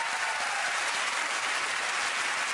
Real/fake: real